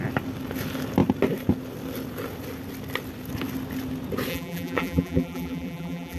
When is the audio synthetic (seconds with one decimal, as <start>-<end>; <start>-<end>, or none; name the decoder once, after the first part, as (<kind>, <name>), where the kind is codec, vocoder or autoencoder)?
4.3-6.2 (vocoder, BigVGAN v2)